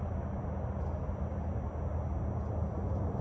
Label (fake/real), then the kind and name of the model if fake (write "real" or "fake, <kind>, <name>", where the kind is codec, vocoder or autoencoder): real